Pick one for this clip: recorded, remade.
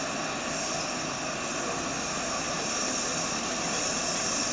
recorded